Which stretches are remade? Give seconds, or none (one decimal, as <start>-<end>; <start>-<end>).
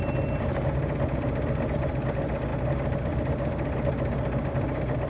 none